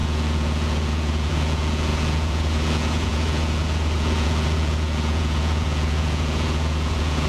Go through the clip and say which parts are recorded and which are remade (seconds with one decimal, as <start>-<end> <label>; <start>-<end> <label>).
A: 0.0-7.3 remade